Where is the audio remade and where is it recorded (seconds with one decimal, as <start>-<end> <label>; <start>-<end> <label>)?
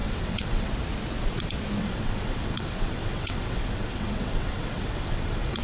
0.0-0.7 remade; 0.7-1.8 recorded; 1.8-5.6 remade